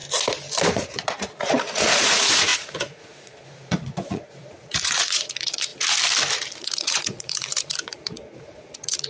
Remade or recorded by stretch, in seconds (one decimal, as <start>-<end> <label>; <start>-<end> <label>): 0.0-0.7 recorded; 0.7-5.7 remade; 5.7-6.6 recorded; 6.6-9.1 remade